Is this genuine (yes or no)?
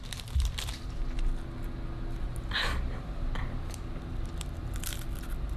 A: yes